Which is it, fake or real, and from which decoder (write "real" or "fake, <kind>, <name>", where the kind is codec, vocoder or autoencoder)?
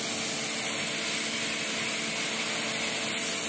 real